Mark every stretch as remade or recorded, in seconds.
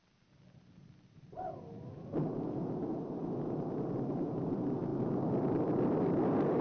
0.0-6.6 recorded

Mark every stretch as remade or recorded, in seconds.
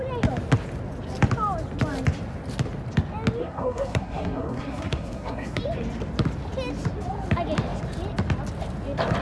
0.0-3.4 recorded; 3.4-5.6 remade; 5.6-9.2 recorded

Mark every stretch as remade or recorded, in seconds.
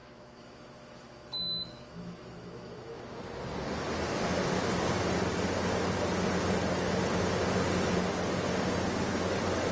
0.0-3.2 remade; 3.2-9.7 recorded